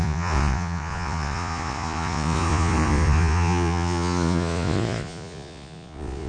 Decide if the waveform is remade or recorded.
remade